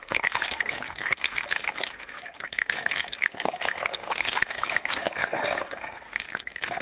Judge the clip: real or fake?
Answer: fake